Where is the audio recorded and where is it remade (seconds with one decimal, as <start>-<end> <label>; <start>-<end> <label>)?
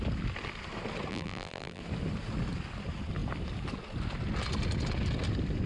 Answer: 0.0-1.1 recorded; 1.1-1.8 remade; 1.8-5.7 recorded